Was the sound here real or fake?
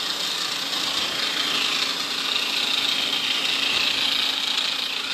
real